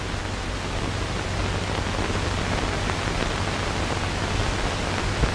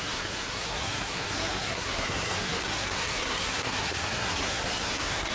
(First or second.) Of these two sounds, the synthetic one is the second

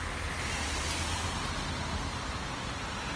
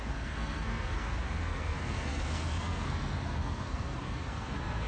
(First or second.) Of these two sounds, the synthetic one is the second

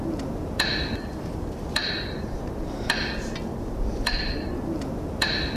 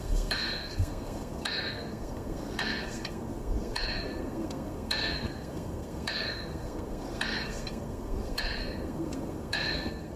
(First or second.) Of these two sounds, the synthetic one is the second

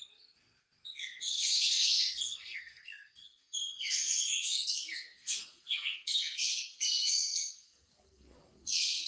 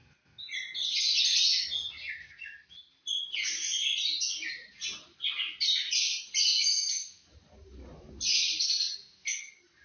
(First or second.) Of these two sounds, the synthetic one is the first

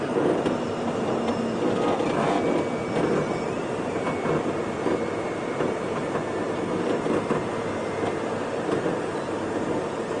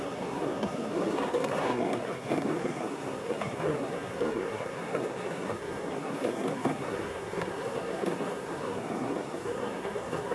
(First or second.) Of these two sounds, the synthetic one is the second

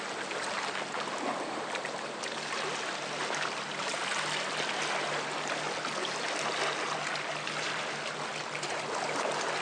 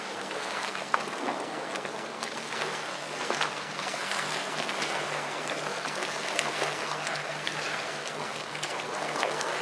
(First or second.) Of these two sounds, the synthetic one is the second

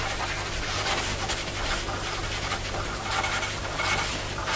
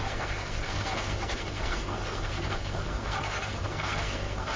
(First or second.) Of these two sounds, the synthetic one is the second